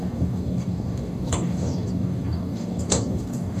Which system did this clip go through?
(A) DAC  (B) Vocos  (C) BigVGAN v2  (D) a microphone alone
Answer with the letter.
A